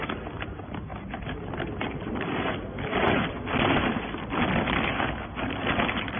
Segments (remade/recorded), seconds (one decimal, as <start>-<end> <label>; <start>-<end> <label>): 0.0-6.2 recorded